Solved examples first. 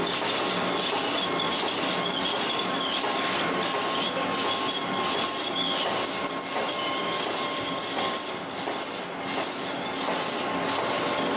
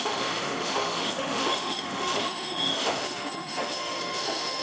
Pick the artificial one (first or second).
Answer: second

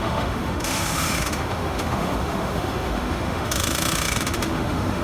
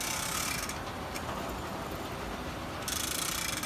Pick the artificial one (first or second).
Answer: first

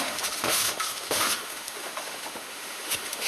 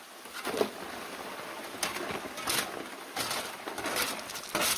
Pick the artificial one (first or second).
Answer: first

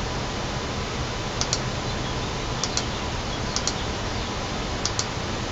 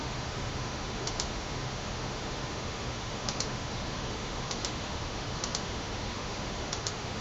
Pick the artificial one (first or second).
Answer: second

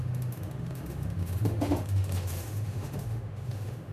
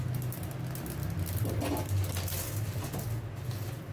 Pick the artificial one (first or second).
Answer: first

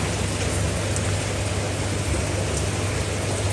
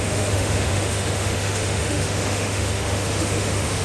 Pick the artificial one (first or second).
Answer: second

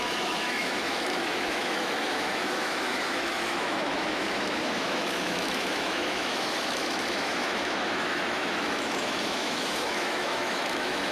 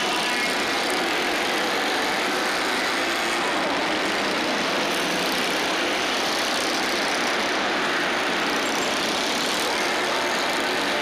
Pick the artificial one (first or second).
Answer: first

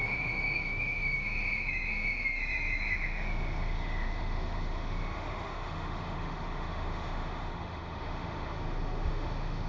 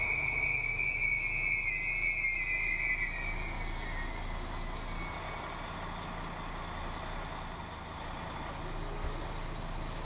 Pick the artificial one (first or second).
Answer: first